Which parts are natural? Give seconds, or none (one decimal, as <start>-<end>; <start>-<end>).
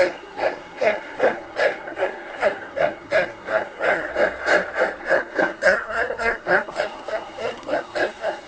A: 4.1-5.0